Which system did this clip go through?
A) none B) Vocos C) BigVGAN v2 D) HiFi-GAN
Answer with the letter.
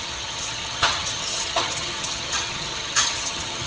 D